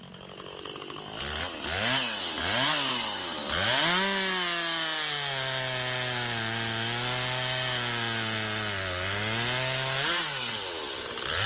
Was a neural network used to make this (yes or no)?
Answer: no